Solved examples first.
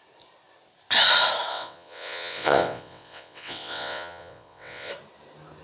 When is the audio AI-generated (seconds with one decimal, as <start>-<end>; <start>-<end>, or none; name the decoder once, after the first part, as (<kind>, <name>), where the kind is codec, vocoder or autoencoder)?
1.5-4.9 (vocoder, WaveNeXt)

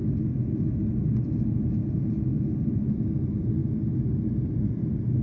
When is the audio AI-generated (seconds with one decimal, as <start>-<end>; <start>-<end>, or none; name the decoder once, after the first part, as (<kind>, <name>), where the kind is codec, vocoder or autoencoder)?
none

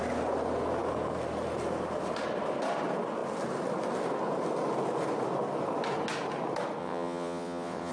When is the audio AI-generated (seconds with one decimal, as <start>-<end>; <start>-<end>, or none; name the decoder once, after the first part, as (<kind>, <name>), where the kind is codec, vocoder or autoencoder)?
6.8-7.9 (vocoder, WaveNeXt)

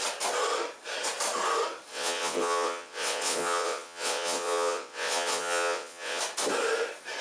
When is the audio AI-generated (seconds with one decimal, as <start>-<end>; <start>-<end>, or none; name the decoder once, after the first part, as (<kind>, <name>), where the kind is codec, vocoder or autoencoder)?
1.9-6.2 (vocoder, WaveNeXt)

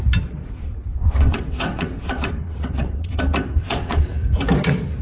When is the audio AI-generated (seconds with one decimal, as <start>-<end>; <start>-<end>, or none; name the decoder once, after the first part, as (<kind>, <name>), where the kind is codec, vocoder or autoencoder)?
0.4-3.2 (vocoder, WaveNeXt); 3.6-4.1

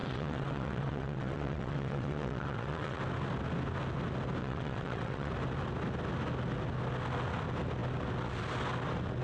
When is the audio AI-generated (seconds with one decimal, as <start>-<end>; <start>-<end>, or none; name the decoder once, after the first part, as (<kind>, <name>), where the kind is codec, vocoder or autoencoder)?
0.0-3.0 (vocoder, WaveNeXt); 4.4-5.3